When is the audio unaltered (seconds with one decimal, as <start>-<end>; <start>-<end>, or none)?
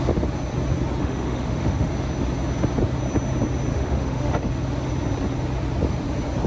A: 0.0-1.0; 1.9-3.7; 4.5-6.5